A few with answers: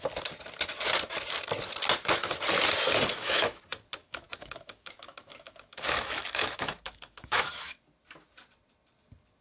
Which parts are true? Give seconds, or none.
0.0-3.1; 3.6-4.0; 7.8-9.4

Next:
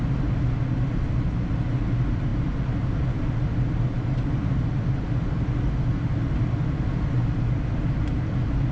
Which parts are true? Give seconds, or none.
0.0-8.7

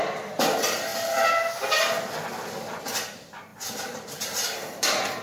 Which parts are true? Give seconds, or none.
0.9-2.5

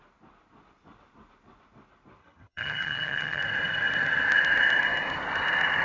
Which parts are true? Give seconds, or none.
0.0-2.2; 3.4-5.8

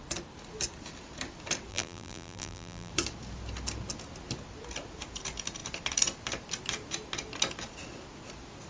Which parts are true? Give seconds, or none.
0.0-1.7; 2.9-8.7

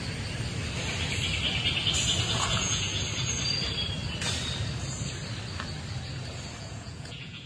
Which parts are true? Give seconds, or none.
0.0-2.3; 2.9-6.6